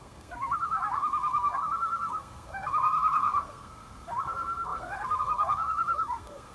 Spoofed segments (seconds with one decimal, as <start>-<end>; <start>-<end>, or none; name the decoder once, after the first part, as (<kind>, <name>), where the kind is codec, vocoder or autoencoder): 0.0-6.5 (codec, SNAC)